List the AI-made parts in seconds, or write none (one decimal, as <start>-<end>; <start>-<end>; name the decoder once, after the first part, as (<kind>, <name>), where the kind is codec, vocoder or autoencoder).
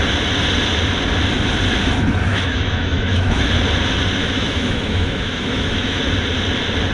2.3-3.5 (autoencoder, DAC-VAE); 4.2-6.0